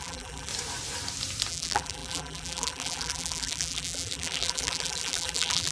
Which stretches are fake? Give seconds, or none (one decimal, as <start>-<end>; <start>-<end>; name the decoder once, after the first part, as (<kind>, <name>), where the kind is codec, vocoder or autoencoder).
0.0-0.5 (vocoder, BigVGAN v2); 1.5-5.7